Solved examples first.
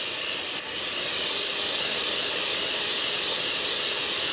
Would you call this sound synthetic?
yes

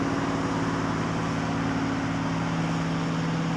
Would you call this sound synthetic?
no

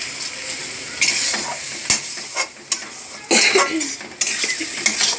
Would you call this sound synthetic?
no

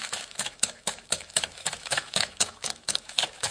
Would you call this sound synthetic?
yes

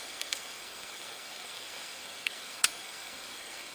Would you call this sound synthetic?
yes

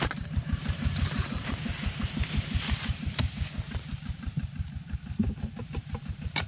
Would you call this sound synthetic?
yes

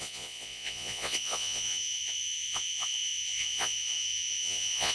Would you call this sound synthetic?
yes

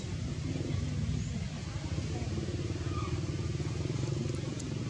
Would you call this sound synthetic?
no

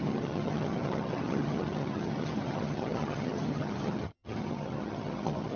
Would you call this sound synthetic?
yes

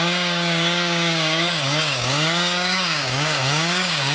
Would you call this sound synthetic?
yes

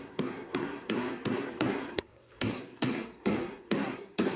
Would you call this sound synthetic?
yes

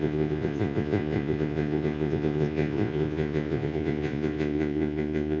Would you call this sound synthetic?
yes